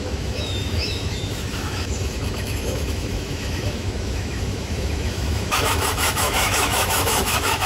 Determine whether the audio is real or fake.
fake